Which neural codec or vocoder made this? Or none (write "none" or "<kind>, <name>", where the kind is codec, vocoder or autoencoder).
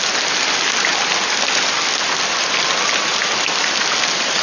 none